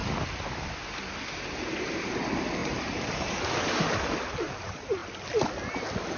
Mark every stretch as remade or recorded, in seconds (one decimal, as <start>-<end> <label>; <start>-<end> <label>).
0.0-2.0 recorded; 2.0-5.0 remade; 5.0-5.7 recorded; 5.7-6.2 remade